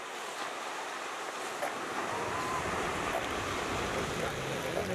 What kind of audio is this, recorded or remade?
recorded